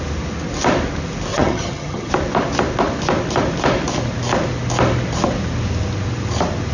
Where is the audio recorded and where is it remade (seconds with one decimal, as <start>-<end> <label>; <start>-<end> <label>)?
0.0-1.3 recorded; 1.3-2.1 remade; 2.1-6.7 recorded